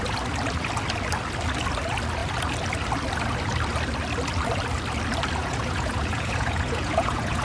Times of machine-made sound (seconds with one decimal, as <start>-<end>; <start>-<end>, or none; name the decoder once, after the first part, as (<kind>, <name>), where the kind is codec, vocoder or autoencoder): 5.4-7.4 (vocoder, Vocos)